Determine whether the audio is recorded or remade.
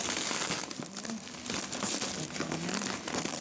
recorded